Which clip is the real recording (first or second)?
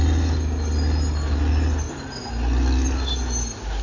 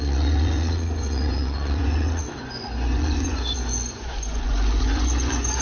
first